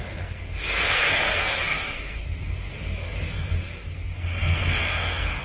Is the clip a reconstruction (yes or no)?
yes